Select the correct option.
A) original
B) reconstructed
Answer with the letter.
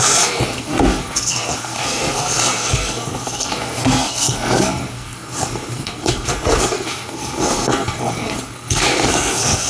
B